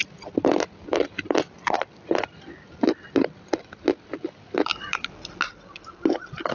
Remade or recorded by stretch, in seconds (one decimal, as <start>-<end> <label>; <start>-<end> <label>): 0.0-6.5 recorded